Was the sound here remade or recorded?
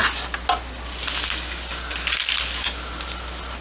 recorded